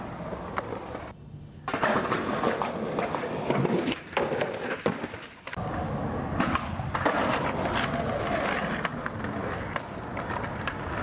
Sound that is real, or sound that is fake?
real